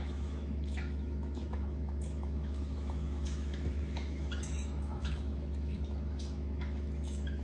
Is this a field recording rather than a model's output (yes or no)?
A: no